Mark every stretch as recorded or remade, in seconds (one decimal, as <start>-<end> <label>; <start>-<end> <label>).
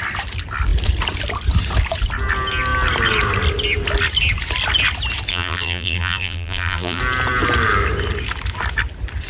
0.0-5.3 recorded; 5.3-7.0 remade; 7.0-9.3 recorded